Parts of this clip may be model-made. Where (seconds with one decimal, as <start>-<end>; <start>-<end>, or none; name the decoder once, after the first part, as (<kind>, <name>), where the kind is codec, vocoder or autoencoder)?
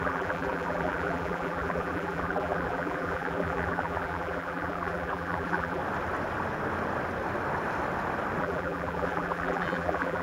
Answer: 0.0-5.8 (vocoder, BigVGAN v2); 8.4-10.2